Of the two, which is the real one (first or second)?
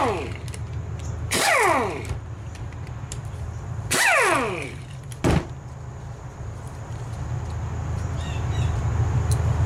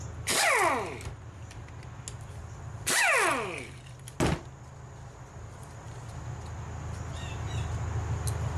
second